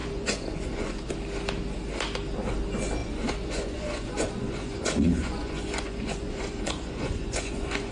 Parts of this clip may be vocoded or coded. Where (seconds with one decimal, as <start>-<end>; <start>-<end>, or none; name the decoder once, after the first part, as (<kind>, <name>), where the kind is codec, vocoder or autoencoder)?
0.0-1.1 (vocoder, Vocos); 3.0-7.9